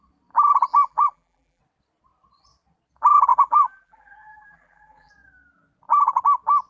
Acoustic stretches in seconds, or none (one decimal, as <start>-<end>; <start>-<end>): 0.0-0.7; 1.6-3.3; 5.1-6.7